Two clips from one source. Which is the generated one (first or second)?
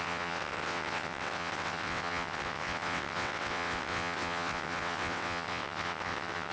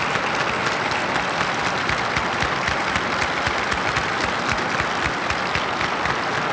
first